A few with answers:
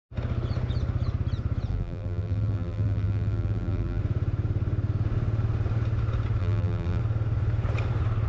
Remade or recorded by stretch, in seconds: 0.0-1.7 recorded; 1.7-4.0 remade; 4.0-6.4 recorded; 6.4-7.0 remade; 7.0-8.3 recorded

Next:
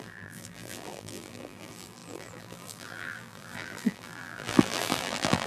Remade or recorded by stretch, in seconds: 0.0-5.5 remade